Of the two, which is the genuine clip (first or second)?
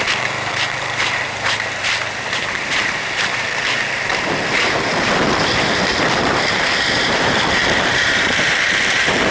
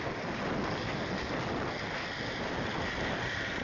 second